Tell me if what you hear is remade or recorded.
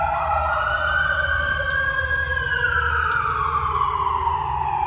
recorded